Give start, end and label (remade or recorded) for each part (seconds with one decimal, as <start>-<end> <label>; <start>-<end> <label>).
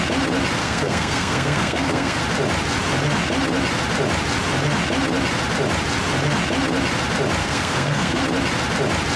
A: 0.0-0.6 recorded; 0.6-2.2 remade; 2.2-7.4 recorded; 7.4-8.2 remade; 8.2-9.2 recorded